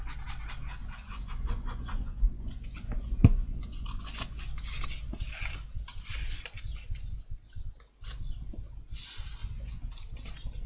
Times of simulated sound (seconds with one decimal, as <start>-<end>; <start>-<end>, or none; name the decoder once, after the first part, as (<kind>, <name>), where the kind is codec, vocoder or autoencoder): 0.8-4.4 (vocoder, Vocos); 9.4-9.9